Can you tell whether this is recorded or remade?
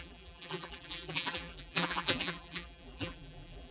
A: remade